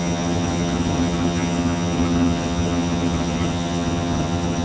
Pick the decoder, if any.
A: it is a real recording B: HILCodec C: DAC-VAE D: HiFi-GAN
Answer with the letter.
D